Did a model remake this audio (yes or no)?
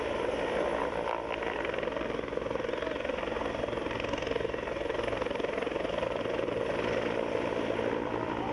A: yes